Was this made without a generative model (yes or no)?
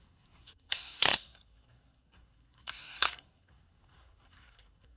no